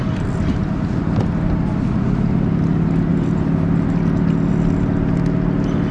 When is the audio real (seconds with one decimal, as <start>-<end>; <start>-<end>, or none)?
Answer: 0.0-5.9